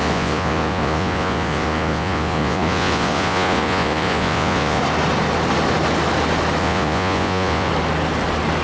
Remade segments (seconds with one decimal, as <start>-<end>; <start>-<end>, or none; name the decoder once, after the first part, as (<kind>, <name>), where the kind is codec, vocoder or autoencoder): 0.0-4.8 (vocoder, Vocos); 6.6-7.7